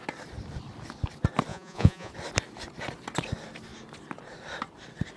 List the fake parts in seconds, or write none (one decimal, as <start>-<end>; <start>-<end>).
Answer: 1.5-2.1